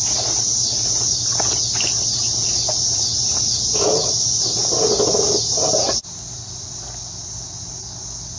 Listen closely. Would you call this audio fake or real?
real